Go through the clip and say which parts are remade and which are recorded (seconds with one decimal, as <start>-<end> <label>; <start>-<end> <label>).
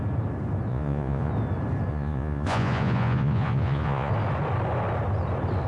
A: 0.0-0.7 recorded; 0.7-1.3 remade; 1.3-1.9 recorded; 1.9-4.1 remade; 4.1-5.7 recorded